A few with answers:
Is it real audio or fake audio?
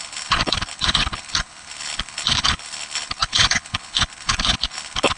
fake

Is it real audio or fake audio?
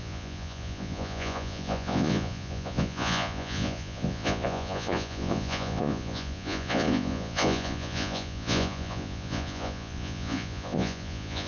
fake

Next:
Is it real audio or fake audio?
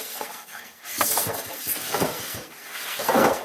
fake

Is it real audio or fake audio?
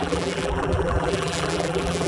fake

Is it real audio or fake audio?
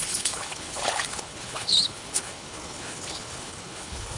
fake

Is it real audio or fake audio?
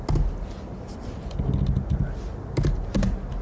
real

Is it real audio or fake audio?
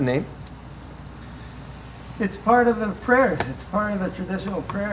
real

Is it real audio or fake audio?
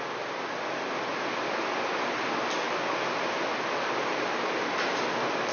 real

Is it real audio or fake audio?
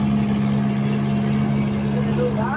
real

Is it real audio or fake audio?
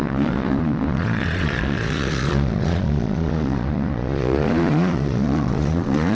fake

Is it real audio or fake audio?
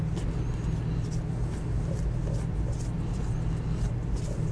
real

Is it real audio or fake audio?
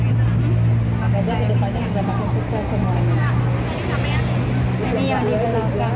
real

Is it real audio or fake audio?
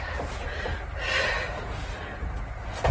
real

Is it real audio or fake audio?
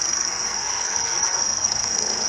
fake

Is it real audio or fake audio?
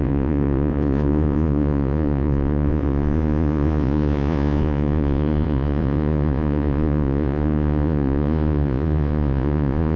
fake